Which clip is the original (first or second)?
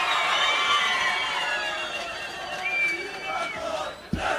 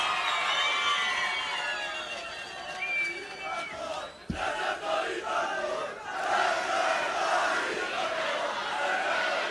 second